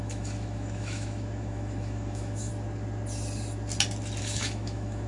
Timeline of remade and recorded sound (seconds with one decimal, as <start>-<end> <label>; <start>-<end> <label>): 0.0-2.5 remade; 2.5-4.2 recorded; 4.2-5.1 remade